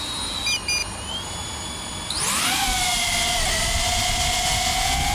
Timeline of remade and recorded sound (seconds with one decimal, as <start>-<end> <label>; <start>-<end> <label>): 0.0-5.1 recorded